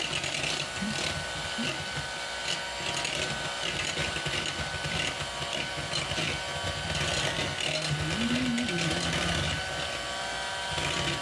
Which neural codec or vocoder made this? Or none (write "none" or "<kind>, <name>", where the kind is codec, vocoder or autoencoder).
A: none